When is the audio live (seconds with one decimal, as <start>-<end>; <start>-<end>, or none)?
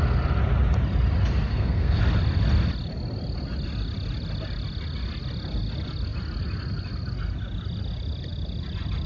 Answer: 0.0-1.5; 2.0-9.1